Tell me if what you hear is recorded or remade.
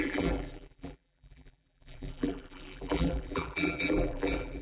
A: remade